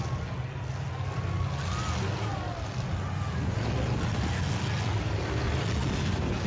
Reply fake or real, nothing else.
real